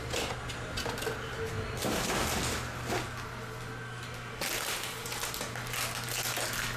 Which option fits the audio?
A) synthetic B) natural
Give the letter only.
B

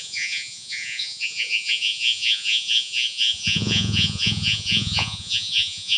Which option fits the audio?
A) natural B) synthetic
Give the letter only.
B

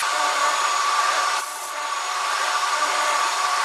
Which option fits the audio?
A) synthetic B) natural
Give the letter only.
A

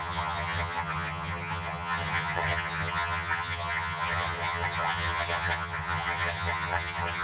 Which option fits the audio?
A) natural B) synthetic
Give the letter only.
B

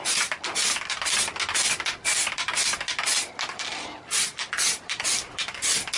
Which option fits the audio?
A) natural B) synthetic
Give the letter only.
A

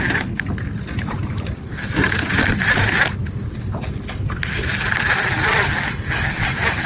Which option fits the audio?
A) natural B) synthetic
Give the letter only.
A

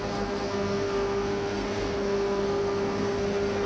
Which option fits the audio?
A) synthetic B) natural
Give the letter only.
A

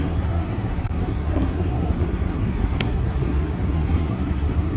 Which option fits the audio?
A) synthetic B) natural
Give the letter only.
A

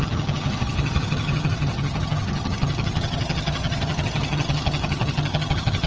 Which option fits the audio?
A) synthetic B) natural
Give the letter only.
A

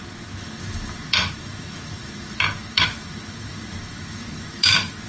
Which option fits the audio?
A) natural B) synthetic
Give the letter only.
B